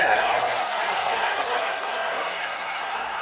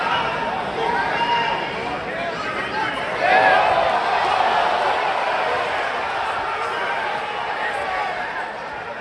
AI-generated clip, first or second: first